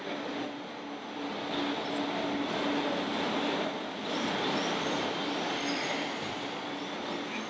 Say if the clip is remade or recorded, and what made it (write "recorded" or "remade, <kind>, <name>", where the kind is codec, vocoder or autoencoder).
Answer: recorded